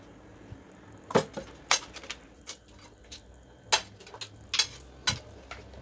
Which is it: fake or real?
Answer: real